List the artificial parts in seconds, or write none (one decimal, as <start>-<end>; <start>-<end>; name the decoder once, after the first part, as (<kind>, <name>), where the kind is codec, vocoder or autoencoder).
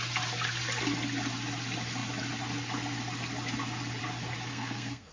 4.5-5.1 (codec, SNAC)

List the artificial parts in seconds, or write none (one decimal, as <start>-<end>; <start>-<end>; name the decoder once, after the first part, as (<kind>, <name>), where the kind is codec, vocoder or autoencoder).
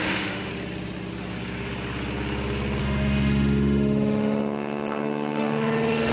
0.0-0.5 (autoencoder, DAC-VAE); 2.8-6.1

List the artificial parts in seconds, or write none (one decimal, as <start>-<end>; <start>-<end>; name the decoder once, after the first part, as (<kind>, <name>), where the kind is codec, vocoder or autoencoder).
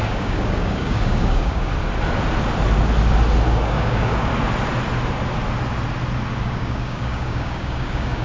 0.0-1.7 (codec, DAC); 3.5-4.3; 6.4-8.2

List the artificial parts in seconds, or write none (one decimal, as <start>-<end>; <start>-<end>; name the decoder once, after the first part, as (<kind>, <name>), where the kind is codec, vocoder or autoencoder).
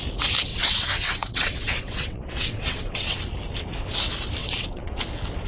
0.5-3.2 (vocoder, WaveNeXt); 4.4-5.0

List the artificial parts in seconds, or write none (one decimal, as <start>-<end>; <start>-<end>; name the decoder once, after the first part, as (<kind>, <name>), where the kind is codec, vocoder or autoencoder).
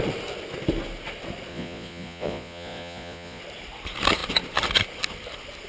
1.5-3.4 (vocoder, Vocos)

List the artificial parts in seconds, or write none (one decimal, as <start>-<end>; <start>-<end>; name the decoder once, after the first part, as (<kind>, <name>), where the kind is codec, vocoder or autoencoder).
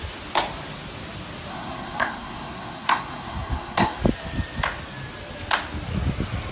1.5-4.0 (codec, SNAC)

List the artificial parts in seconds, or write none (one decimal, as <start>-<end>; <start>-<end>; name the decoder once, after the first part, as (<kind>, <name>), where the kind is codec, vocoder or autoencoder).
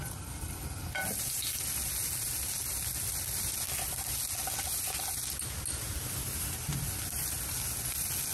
none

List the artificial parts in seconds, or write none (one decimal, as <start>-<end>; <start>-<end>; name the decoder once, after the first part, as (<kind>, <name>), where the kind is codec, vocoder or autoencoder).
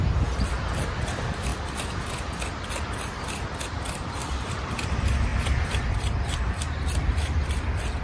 0.0-1.5 (vocoder, BigVGAN v2); 2.8-8.0